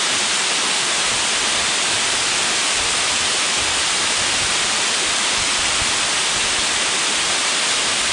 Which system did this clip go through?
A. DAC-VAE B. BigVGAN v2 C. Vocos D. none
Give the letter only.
D